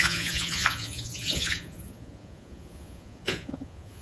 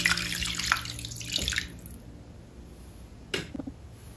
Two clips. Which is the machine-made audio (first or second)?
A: first